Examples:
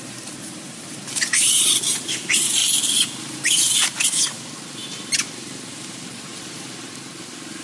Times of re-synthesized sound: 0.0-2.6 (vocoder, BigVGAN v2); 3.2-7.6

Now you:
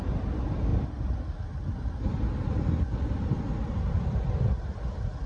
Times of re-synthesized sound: none